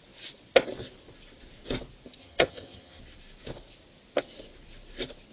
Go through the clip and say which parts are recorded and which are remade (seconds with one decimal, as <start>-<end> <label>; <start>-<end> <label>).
0.0-2.2 recorded; 2.2-3.0 remade; 3.0-5.3 recorded